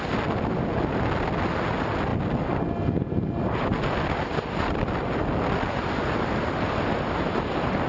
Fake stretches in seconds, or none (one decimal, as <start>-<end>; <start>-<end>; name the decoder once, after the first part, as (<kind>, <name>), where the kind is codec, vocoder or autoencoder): none